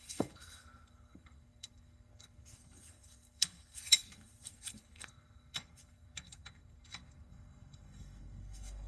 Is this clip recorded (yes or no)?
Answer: no